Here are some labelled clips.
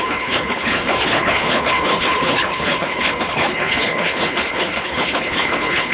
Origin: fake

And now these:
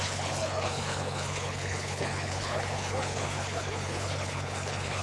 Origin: fake